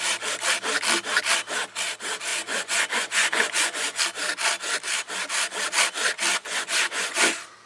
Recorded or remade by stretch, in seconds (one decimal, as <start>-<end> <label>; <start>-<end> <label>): 0.0-2.3 recorded; 2.3-4.0 remade; 4.0-6.3 recorded; 6.3-7.3 remade; 7.3-7.7 recorded